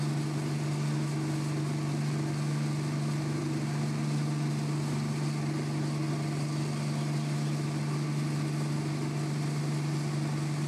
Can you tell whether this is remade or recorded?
recorded